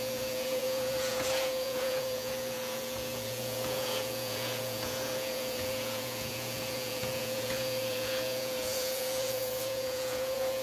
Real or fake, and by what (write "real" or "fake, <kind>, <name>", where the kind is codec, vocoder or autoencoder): fake, vocoder, Vocos